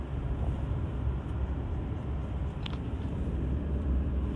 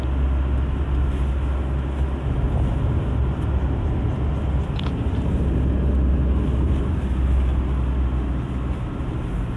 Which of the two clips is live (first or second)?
second